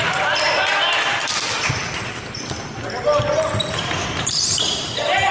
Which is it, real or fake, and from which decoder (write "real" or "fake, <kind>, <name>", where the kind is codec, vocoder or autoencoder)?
fake, vocoder, BigVGAN v2